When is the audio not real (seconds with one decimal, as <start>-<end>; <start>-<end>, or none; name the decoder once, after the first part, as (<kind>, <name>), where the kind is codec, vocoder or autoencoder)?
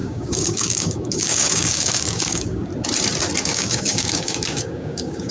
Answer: 0.0-2.7 (codec, DAC); 3.4-5.3